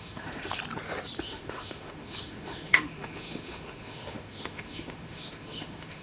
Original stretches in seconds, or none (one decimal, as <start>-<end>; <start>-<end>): 0.6-1.2

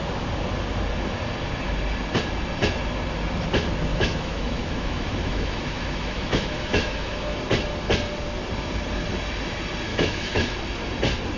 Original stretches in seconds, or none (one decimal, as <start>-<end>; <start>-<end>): 0.0-3.9; 7.4-9.9; 10.5-11.4